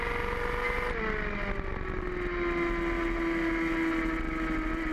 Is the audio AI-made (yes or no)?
no